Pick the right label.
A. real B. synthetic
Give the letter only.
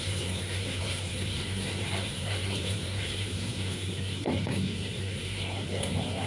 B